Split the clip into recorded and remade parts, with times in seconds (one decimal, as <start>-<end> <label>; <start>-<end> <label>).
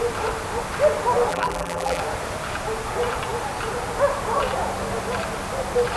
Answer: 0.0-1.3 recorded; 1.3-2.0 remade; 2.0-6.0 recorded